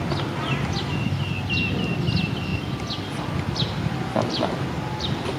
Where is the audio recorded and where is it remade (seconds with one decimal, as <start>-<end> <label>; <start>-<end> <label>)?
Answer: 0.0-5.4 recorded